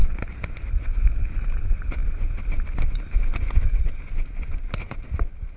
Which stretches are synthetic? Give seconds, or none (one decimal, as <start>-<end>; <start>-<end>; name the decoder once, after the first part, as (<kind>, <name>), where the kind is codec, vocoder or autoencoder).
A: 2.0-3.8 (vocoder, BigVGAN v2)

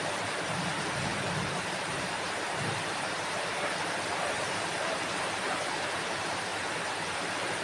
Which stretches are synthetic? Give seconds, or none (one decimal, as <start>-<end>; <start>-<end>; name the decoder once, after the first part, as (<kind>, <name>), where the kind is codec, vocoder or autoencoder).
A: 0.0-6.5 (vocoder, BigVGAN v2); 7.1-7.6

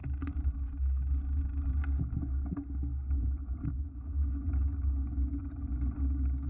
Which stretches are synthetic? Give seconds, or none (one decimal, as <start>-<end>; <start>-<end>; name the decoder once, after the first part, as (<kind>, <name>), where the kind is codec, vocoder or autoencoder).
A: 0.0-0.5 (vocoder, BigVGAN v2); 2.9-3.8

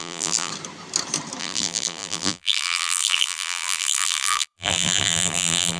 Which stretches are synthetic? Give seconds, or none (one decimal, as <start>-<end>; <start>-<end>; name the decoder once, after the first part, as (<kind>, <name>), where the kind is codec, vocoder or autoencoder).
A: 0.0-0.5 (vocoder, BigVGAN v2); 1.4-5.8

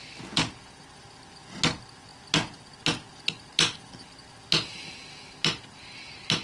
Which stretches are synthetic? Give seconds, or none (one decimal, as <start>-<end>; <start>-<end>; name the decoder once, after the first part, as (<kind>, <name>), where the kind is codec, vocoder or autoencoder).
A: none